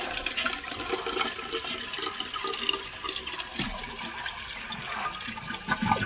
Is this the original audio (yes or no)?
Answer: yes